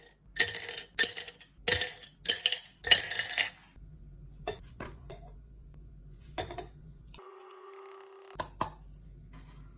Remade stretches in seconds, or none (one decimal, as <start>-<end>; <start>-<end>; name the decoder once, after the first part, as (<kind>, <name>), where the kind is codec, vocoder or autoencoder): 3.9-7.7 (vocoder, Vocos)